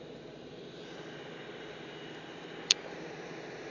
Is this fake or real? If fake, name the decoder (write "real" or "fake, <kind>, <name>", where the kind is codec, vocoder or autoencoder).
fake, vocoder, BigVGAN v2